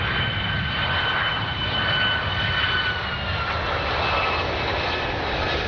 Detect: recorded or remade recorded